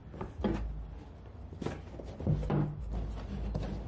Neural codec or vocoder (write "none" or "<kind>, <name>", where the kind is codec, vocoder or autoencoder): none